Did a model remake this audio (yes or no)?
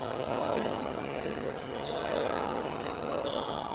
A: yes